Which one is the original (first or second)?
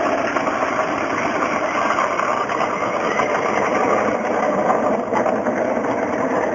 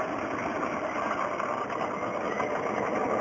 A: second